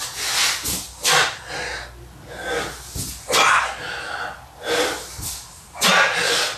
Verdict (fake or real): real